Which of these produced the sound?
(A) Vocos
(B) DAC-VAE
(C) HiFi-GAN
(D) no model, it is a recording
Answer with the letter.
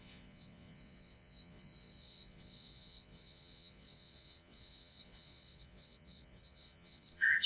A